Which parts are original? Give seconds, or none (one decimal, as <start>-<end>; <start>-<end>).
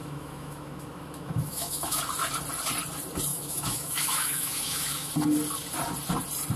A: 2.0-3.3; 5.1-6.6